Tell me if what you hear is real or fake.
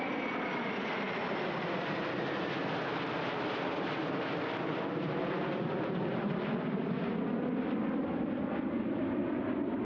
real